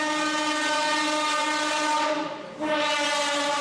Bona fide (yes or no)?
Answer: yes